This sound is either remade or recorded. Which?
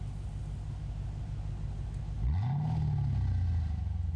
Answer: recorded